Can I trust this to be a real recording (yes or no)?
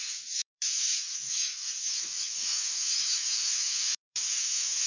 no